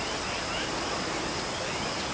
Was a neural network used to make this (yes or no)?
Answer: no